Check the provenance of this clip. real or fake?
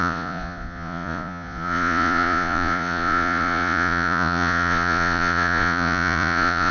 fake